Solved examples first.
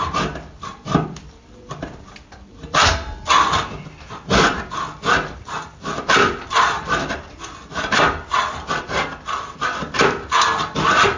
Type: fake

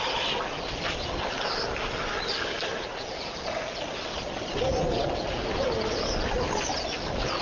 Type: real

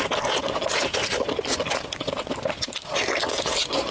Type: real